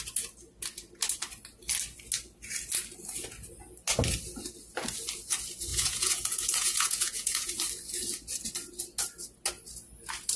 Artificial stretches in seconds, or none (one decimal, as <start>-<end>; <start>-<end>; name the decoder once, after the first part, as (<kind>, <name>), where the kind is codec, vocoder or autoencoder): 5.7-7.5 (vocoder, Vocos)